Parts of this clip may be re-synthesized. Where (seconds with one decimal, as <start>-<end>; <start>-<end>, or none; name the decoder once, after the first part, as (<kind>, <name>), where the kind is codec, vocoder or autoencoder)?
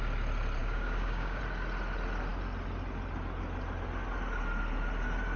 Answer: 0.6-1.4 (codec, DAC)